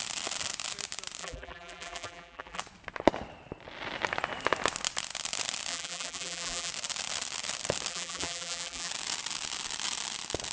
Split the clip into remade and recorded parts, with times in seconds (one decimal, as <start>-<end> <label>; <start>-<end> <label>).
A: 0.0-1.2 recorded; 1.2-2.6 remade; 2.6-5.7 recorded; 5.7-6.7 remade; 6.7-7.9 recorded; 7.9-8.9 remade; 8.9-10.5 recorded